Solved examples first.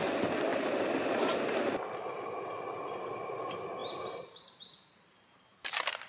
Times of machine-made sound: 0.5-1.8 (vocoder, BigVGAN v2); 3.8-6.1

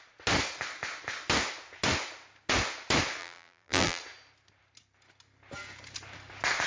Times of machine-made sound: 3.2-4.0 (vocoder, BigVGAN v2)

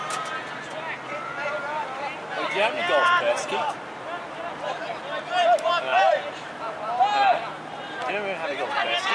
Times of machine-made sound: none

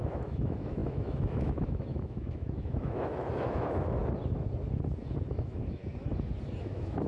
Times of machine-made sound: 0.0-4.0 (autoencoder, DAC-VAE); 5.3-5.8; 6.6-7.1